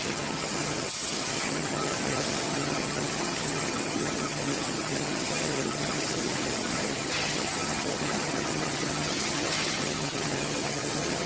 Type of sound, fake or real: fake